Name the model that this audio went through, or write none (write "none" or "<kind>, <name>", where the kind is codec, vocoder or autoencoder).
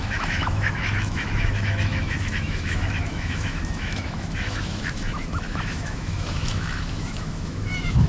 autoencoder, DAC-VAE